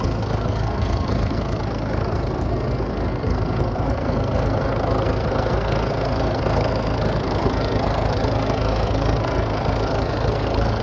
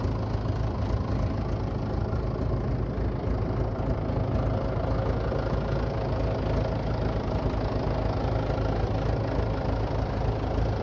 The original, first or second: second